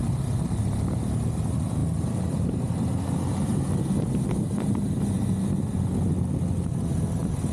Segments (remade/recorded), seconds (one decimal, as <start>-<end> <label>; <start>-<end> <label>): 0.0-1.8 recorded; 1.8-4.6 remade; 4.6-7.5 recorded